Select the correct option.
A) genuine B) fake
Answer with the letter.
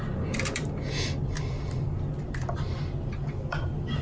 A